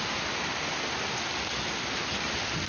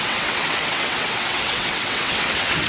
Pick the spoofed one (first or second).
second